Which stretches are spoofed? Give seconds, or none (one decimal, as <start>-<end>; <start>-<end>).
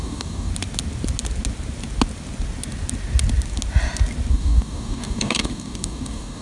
0.0-0.5; 4.3-6.4